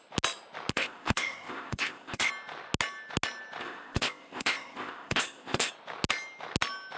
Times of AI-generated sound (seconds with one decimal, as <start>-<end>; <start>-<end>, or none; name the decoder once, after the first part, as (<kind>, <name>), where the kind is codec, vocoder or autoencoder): 0.7-2.3 (codec, ZipCodec); 3.6-5.7